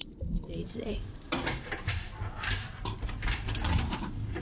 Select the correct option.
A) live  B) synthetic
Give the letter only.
B